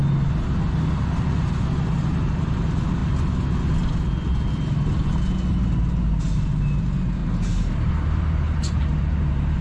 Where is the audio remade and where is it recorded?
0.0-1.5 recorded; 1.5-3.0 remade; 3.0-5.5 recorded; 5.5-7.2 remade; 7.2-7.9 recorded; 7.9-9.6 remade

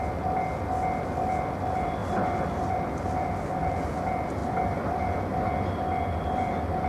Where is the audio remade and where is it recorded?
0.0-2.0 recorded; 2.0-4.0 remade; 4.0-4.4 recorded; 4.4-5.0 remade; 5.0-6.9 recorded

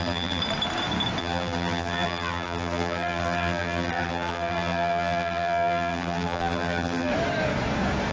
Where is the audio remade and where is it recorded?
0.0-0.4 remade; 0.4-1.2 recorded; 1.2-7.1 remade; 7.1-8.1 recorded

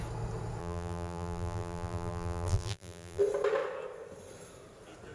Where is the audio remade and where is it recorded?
0.0-0.6 recorded; 0.6-3.2 remade; 3.2-5.1 recorded

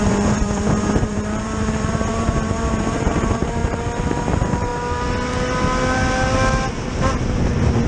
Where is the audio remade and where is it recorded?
0.0-3.6 remade; 3.6-4.2 recorded; 4.2-4.7 remade; 4.7-7.9 recorded